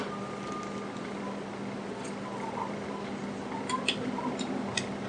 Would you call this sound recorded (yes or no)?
yes